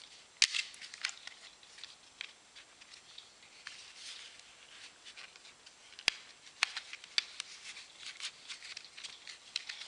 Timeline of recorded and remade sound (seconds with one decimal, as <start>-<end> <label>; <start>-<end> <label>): 0.0-9.9 recorded